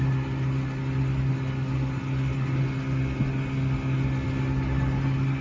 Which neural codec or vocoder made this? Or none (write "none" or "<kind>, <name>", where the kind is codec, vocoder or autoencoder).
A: none